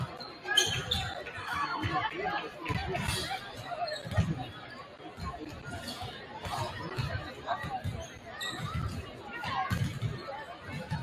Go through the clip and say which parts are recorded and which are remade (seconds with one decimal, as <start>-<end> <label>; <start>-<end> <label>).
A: 0.0-1.4 recorded; 1.4-1.9 remade; 1.9-11.0 recorded